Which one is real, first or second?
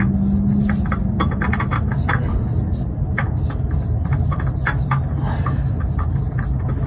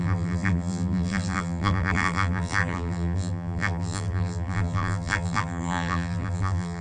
first